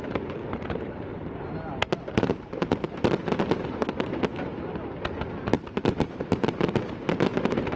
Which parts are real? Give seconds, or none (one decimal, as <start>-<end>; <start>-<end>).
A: 1.1-1.9; 4.3-6.0